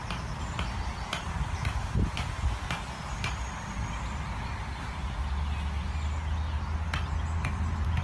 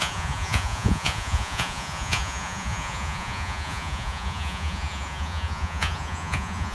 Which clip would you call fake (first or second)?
second